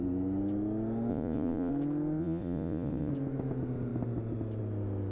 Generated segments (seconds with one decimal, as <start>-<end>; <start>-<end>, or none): 1.1-1.7; 2.2-3.1